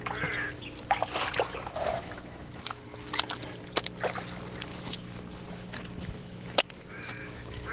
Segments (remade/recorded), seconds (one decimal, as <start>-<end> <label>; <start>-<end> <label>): 0.0-1.9 recorded; 1.9-3.1 remade; 3.1-4.7 recorded; 4.7-6.6 remade; 6.6-7.2 recorded; 7.2-7.7 remade